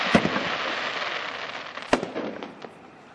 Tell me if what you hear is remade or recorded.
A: recorded